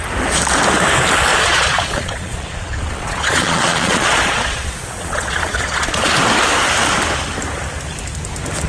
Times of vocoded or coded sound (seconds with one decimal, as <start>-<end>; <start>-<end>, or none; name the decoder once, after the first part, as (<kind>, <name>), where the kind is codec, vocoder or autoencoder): 1.3-6.1 (vocoder, Vocos)